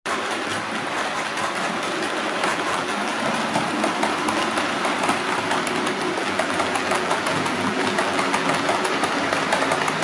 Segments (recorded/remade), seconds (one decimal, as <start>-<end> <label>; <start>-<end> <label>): 0.0-2.5 recorded; 2.5-3.2 remade; 3.2-6.2 recorded; 6.2-8.9 remade; 8.9-10.0 recorded